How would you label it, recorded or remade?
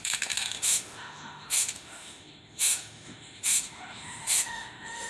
remade